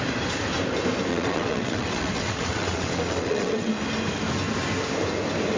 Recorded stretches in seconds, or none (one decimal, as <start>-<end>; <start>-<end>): 0.0-1.1; 3.7-5.6